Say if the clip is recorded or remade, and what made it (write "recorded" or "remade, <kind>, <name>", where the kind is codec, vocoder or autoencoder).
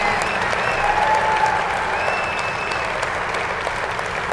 recorded